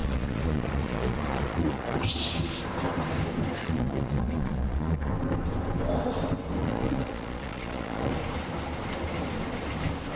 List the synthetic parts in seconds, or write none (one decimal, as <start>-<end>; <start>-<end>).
0.0-2.0; 3.6-5.1; 6.6-8.1